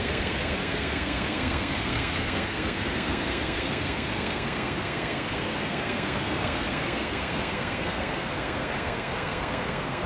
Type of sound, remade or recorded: remade